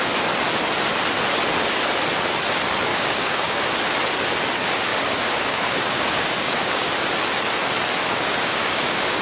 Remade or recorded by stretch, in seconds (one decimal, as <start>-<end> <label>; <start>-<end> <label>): 0.0-2.9 recorded; 2.9-3.7 remade; 3.7-4.9 recorded; 4.9-6.9 remade; 6.9-8.0 recorded; 8.0-9.2 remade

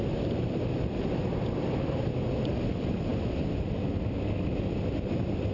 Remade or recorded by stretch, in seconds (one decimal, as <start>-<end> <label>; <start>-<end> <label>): 0.0-5.5 recorded

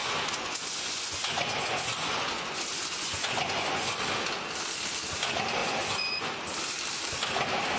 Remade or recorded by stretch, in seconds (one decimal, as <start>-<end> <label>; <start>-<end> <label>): 0.0-4.0 remade; 4.0-5.6 recorded; 5.6-6.3 remade; 6.3-7.8 recorded